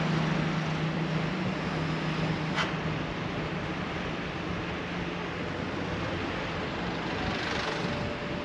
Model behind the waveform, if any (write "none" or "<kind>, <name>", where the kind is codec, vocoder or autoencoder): none